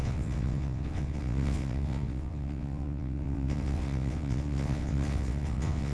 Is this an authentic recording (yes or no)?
no